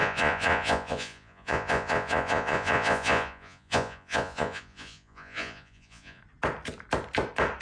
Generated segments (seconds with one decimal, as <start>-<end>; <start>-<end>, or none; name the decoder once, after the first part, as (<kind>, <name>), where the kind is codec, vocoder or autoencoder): 0.0-6.2 (vocoder, Vocos)